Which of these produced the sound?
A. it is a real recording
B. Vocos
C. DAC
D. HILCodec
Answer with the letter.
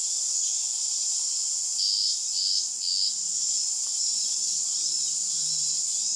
A